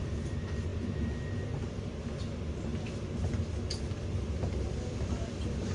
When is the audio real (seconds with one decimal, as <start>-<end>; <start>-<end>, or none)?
0.0-5.7